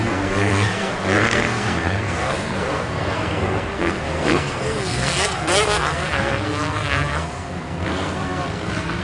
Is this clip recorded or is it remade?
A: remade